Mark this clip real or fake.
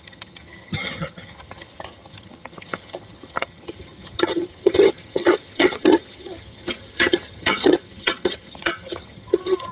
fake